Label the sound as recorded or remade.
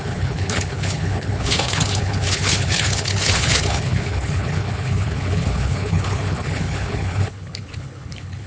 remade